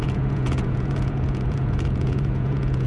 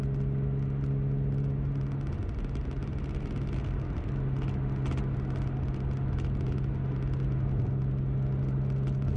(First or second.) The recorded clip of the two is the second